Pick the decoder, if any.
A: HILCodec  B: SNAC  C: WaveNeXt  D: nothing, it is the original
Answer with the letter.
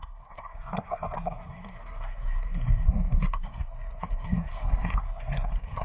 B